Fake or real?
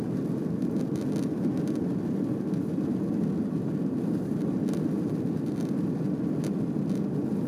real